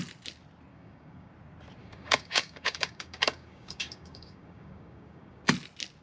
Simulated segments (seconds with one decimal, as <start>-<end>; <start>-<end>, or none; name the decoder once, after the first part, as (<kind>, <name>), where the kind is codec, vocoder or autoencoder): 0.7-1.3 (codec, DAC); 1.8-5.4